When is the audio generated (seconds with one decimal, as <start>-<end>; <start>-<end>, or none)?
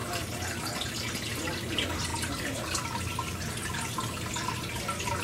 none